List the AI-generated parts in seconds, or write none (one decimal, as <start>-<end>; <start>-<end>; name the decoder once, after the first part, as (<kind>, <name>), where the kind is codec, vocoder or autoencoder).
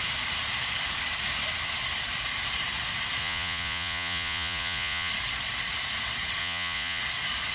3.2-5.1 (vocoder, Vocos); 6.4-7.0